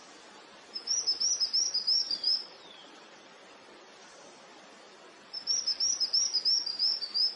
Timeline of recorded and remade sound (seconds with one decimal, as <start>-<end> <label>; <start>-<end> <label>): 0.0-2.0 recorded; 2.0-6.4 remade; 6.4-7.4 recorded